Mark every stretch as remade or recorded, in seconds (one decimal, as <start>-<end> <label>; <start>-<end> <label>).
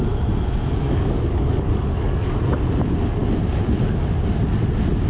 0.0-0.8 recorded; 0.8-2.4 remade; 2.4-5.1 recorded